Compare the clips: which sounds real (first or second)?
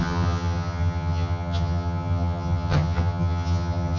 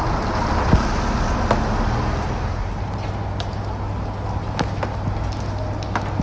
second